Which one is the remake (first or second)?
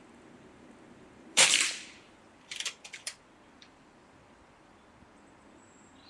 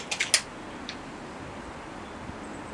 first